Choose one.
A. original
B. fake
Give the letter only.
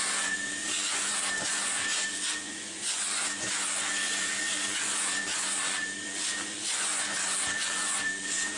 B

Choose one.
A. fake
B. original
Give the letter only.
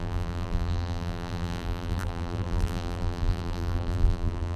A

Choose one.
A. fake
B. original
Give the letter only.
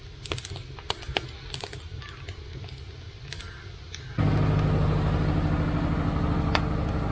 B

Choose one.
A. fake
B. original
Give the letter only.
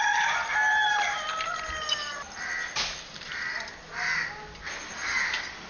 B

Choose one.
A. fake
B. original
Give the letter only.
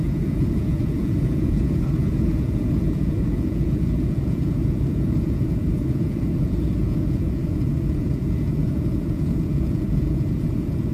A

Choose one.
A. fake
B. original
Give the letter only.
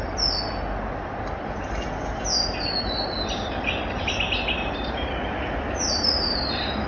B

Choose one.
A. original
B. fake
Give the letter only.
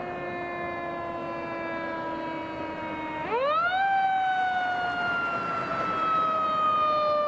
A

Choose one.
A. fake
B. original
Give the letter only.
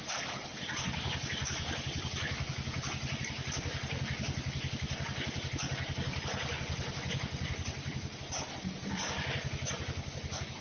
B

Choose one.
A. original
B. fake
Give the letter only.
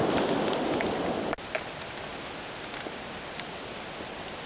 A